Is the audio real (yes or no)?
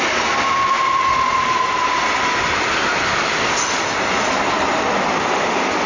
yes